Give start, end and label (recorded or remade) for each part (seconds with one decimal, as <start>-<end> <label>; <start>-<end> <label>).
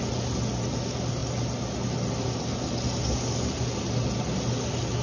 0.0-5.0 recorded